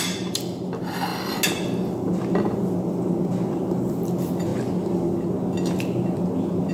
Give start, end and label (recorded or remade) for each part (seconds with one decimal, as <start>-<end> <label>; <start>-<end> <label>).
0.0-6.7 recorded